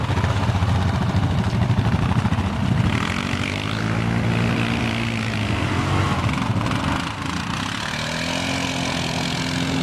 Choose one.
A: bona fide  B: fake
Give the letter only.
A